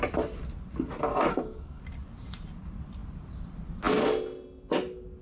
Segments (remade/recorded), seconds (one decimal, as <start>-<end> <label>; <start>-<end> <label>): 0.0-1.3 recorded; 1.3-1.8 remade; 1.8-5.2 recorded